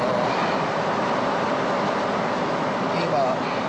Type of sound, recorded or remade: recorded